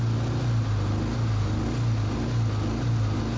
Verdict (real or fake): real